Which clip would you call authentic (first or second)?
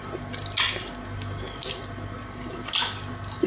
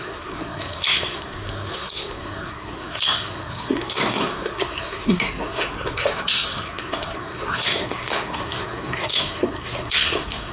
first